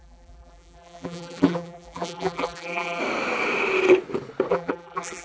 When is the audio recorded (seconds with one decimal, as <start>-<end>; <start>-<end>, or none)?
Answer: 3.0-4.5